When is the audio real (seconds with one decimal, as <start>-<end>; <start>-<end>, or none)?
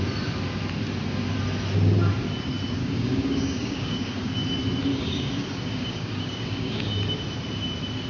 0.0-2.8; 4.3-4.9; 6.9-8.1